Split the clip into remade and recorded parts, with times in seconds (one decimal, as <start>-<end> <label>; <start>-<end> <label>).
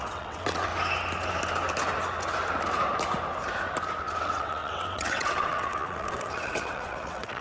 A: 0.0-0.7 remade; 0.7-4.0 recorded; 4.0-7.4 remade